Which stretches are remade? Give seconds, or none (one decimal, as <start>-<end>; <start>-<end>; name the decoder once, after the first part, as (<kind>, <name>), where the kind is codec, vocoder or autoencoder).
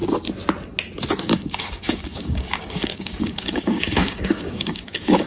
1.2-5.3 (codec, DAC)